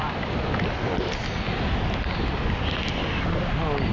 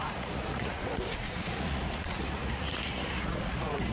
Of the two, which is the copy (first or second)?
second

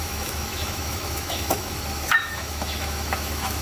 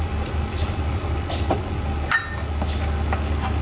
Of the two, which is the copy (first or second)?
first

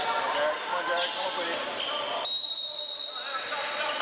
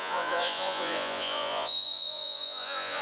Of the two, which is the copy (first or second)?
second